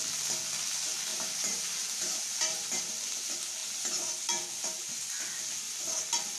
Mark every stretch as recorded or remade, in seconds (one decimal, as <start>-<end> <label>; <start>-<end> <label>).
0.0-1.1 recorded; 1.1-2.8 remade; 2.8-6.4 recorded